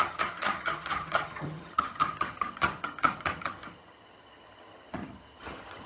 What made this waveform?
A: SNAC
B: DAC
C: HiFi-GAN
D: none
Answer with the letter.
C